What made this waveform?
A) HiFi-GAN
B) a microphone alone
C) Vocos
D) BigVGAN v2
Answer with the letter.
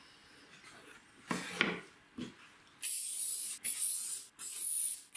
B